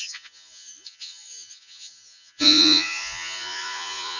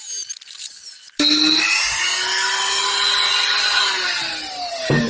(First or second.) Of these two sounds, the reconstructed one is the first